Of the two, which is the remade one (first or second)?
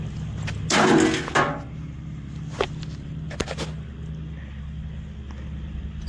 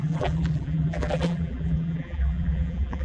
second